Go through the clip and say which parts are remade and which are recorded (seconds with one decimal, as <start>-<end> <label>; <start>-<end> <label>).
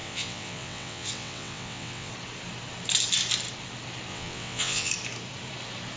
0.0-2.1 remade; 2.1-4.1 recorded; 4.1-4.9 remade; 4.9-6.0 recorded